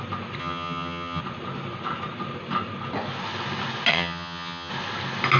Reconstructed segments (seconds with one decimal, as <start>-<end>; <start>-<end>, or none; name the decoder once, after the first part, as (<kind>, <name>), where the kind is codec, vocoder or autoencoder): 0.4-1.2 (vocoder, HiFi-GAN); 3.9-4.7